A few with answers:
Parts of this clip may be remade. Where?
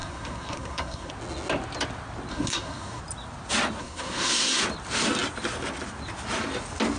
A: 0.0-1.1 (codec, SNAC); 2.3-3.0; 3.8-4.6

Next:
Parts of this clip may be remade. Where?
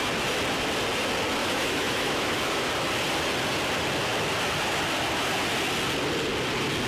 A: 1.4-2.7 (autoencoder, DAC-VAE)